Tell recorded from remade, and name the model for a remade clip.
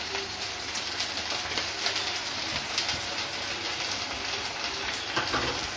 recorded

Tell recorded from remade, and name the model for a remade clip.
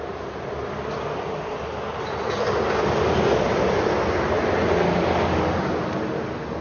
recorded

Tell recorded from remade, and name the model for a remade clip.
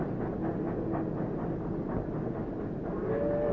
recorded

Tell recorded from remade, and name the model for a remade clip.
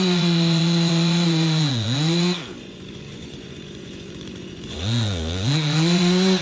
remade, vocoder, Vocos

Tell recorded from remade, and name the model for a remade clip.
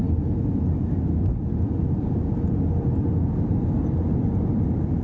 recorded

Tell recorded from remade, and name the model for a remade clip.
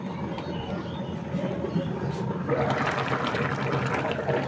recorded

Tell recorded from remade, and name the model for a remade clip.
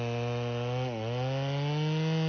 recorded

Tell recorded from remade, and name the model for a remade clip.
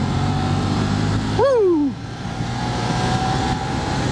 remade, vocoder, BigVGAN v2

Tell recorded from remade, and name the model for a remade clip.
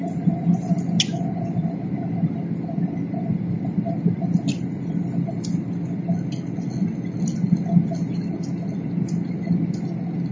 recorded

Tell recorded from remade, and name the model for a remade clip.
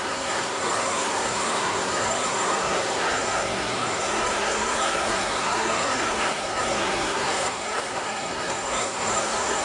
remade, codec, SNAC